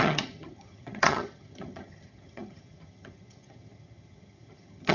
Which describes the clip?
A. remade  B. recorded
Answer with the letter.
A